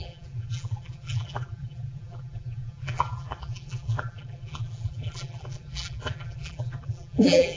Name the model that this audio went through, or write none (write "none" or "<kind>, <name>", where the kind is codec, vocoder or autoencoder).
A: vocoder, BigVGAN v2